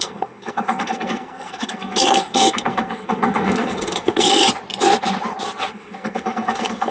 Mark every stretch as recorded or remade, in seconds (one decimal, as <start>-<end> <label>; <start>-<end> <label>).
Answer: 0.0-4.4 remade; 4.4-5.7 recorded; 5.7-6.9 remade